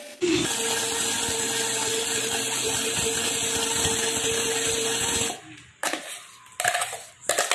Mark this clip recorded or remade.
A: recorded